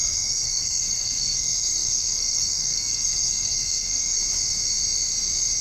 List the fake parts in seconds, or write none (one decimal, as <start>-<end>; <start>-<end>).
0.0-4.2